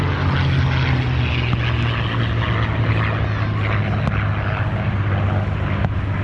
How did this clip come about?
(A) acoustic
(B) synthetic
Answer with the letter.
A